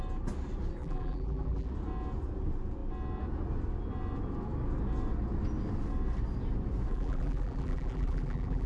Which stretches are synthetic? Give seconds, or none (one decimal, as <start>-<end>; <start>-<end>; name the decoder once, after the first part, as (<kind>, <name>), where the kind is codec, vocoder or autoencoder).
0.8-1.7 (vocoder, BigVGAN v2); 6.9-8.7